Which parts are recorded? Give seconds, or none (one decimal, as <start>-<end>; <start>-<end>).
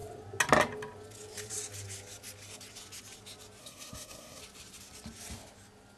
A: 0.0-3.6; 4.4-6.0